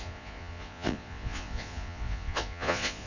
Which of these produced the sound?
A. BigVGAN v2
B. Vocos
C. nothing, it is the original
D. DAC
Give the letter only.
B